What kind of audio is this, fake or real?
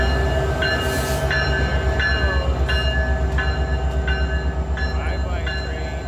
real